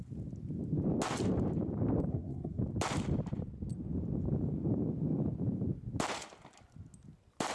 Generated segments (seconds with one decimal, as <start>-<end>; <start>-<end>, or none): 2.1-2.6